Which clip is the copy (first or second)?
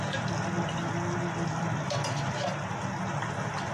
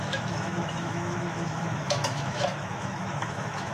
second